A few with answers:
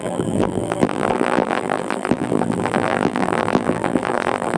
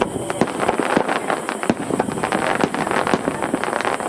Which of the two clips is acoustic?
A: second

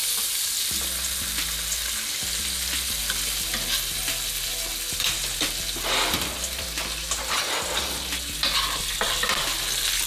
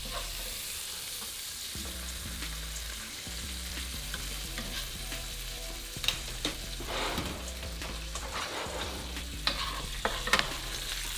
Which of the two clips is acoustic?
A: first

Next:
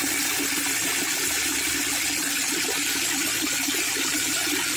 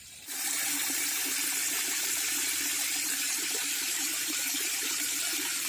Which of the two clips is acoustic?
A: first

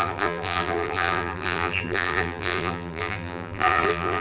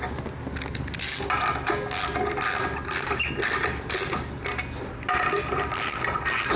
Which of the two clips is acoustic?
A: second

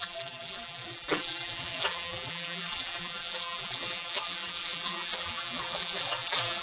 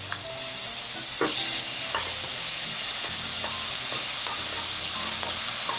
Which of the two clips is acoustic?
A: second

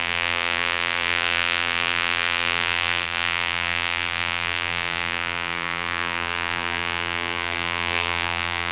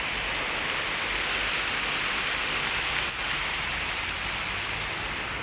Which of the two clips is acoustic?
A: second